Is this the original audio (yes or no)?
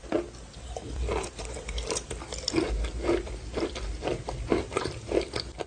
yes